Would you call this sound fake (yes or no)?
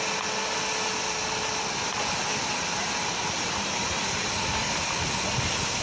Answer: no